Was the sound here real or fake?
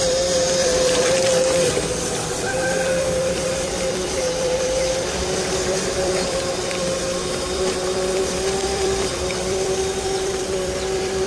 fake